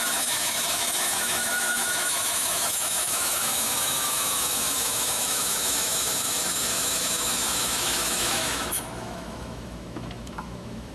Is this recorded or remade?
remade